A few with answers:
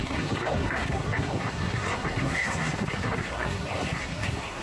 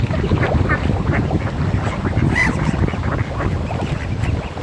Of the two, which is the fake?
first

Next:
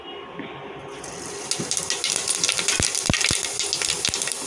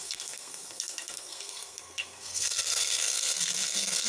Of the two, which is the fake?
second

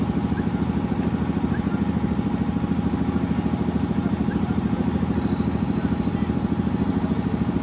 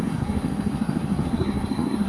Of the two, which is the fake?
second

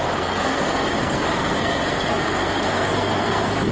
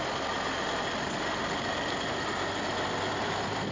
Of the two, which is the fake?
first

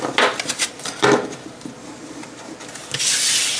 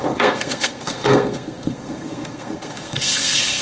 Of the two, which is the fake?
second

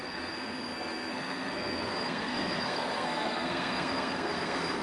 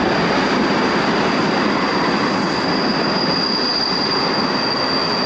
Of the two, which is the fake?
first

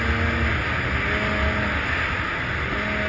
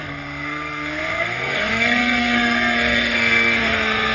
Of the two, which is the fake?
second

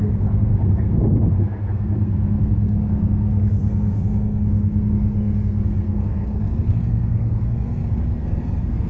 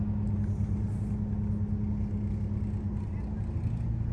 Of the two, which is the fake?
first